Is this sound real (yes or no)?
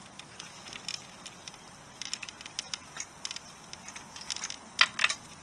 yes